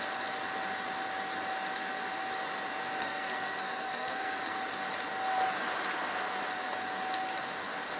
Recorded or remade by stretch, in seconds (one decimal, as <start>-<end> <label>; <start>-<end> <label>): 0.0-3.0 recorded; 3.0-4.6 remade; 4.6-8.0 recorded